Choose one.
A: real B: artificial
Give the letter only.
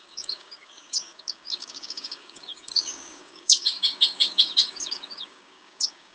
B